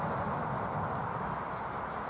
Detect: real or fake real